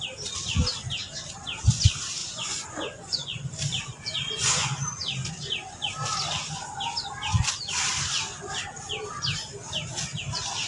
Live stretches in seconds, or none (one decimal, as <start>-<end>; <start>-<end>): 0.0-2.2; 3.5-3.9; 4.7-10.7